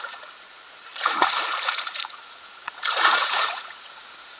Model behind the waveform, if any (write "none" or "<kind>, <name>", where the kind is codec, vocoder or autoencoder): vocoder, Vocos